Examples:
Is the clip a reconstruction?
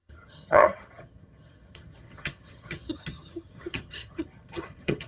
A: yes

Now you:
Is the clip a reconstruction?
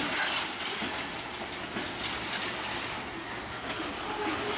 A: no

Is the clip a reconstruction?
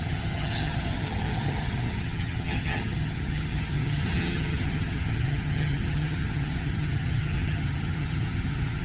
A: yes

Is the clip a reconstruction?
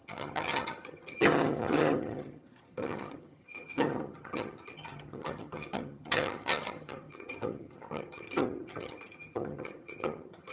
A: yes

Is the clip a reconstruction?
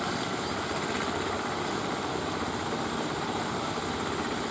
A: no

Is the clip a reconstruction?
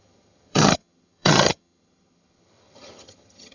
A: yes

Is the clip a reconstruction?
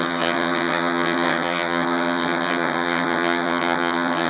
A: yes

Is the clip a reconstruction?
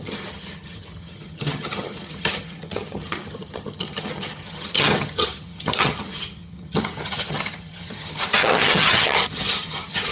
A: yes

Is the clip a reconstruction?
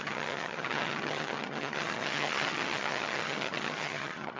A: yes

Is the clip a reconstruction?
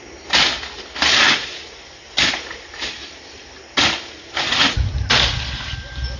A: no